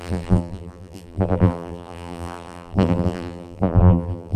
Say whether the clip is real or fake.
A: fake